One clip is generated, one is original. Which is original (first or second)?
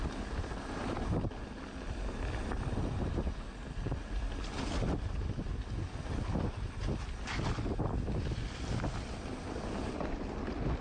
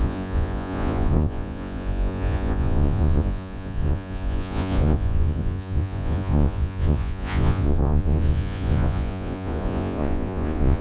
first